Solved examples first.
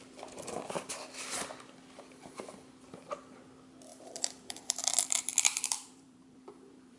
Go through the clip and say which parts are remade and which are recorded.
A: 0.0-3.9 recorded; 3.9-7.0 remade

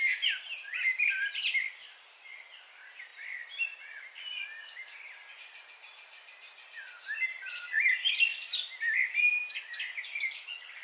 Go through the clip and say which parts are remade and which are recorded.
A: 0.0-10.8 recorded

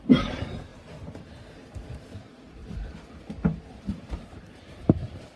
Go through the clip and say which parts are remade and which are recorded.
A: 0.0-0.7 remade; 0.7-2.0 recorded; 2.0-2.6 remade; 2.6-3.9 recorded; 3.9-5.4 remade